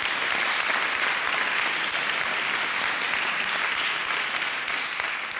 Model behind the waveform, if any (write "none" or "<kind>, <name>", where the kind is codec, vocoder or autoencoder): none